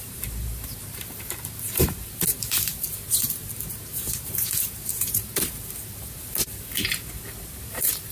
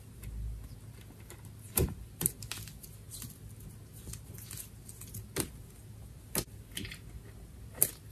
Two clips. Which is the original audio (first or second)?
second